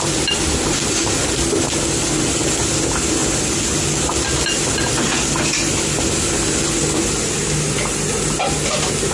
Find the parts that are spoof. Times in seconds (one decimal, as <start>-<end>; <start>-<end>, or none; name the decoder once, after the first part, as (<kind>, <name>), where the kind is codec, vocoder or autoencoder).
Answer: none